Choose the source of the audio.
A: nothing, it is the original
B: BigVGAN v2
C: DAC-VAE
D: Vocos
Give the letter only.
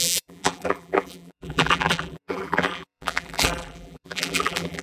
B